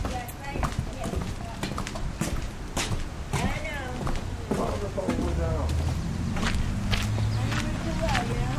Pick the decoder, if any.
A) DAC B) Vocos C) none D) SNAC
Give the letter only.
C